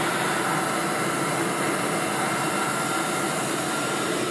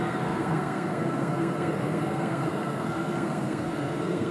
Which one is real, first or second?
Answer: first